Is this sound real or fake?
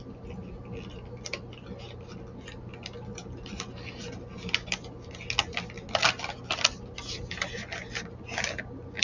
real